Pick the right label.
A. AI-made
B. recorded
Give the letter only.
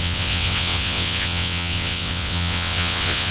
A